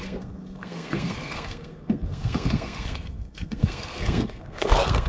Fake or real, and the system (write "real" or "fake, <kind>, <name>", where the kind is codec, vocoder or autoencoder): fake, codec, SNAC